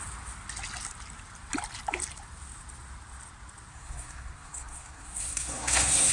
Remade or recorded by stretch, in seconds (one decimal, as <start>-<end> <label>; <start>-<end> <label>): 0.0-3.7 recorded; 3.7-6.1 remade

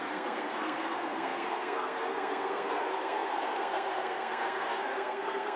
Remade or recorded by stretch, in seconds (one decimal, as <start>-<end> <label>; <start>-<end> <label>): 0.0-5.6 remade

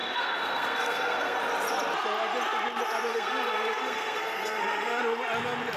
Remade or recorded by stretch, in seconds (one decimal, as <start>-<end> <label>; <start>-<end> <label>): 0.0-1.4 remade; 1.4-3.1 recorded; 3.1-5.0 remade; 5.0-5.8 recorded

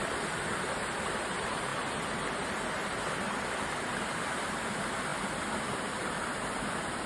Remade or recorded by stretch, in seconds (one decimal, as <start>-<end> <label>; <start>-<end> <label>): 0.0-7.1 recorded

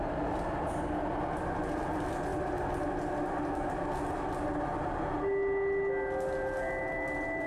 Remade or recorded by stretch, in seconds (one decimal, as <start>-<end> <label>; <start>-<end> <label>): 0.0-7.5 recorded

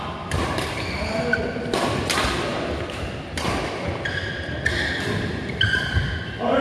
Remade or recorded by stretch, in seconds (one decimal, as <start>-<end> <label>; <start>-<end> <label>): 0.0-6.6 recorded